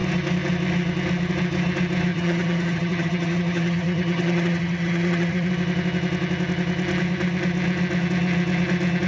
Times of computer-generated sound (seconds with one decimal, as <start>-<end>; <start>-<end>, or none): 2.1-5.5